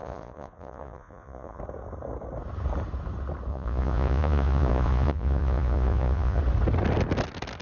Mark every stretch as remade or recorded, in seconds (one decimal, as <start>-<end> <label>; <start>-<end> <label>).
0.0-1.6 remade; 1.6-3.5 recorded; 3.5-6.4 remade; 6.4-7.6 recorded